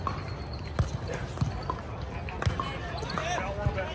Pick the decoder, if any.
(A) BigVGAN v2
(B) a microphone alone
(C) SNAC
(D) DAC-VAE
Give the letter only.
B